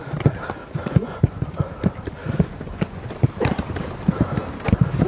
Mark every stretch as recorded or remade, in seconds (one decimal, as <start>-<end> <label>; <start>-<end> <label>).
0.0-0.6 recorded; 0.6-1.8 remade; 1.8-2.2 recorded; 2.2-3.0 remade; 3.0-5.1 recorded